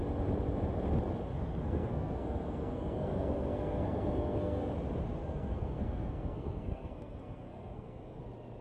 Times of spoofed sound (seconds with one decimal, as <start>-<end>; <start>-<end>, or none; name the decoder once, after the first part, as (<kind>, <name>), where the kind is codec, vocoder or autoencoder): 1.3-4.7 (codec, SNAC); 5.2-8.2